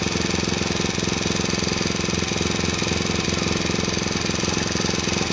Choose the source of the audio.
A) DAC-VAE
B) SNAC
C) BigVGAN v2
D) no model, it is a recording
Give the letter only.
D